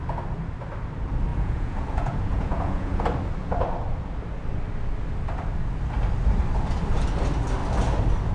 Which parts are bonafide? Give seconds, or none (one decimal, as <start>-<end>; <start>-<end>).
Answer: 0.0-1.3; 3.0-8.3

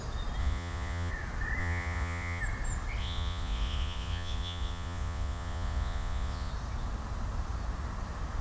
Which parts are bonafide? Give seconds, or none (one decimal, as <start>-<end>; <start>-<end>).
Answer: 0.0-0.4; 1.1-1.6; 2.4-3.0; 6.5-8.4

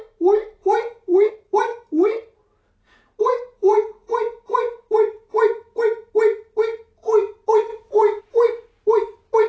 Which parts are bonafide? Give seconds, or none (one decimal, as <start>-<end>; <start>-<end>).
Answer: 0.0-0.6; 1.3-2.8; 6.1-7.7; 8.2-9.5

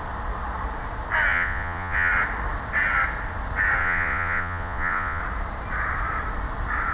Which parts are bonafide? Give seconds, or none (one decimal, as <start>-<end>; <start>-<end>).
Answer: 0.0-1.3; 2.1-3.8; 5.2-6.9

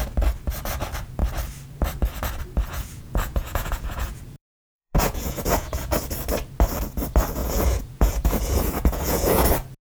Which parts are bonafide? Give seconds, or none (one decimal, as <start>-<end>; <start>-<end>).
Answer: 0.0-2.7; 6.0-7.4; 9.5-9.9